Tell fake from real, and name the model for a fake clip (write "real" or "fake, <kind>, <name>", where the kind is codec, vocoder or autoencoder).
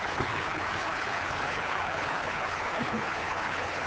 fake, codec, HILCodec